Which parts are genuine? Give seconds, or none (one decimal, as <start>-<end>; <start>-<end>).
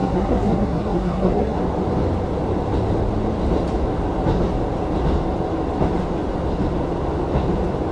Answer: 1.6-7.9